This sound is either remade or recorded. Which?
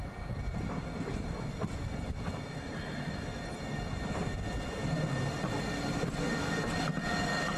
recorded